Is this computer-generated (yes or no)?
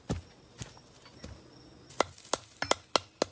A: no